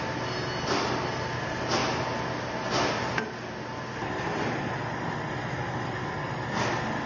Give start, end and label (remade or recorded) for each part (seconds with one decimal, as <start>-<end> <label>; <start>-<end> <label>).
0.0-7.1 recorded